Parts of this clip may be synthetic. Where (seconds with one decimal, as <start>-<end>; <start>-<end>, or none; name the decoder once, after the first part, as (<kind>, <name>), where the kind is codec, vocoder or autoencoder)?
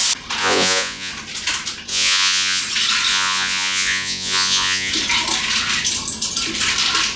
0.4-1.1 (vocoder, Vocos); 1.9-2.6; 3.1-4.9